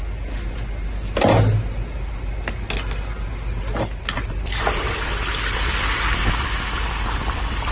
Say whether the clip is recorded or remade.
recorded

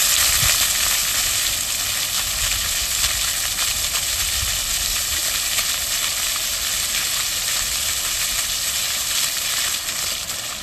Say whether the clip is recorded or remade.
recorded